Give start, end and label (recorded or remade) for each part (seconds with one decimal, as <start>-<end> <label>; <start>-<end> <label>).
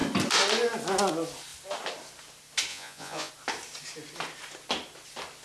0.0-2.7 recorded; 2.7-3.3 remade; 3.3-5.4 recorded